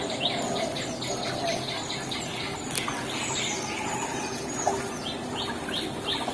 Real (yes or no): yes